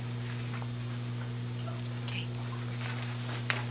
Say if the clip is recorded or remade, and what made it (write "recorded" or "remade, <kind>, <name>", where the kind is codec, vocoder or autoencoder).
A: recorded